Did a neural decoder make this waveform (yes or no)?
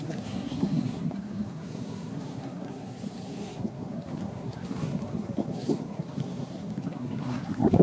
yes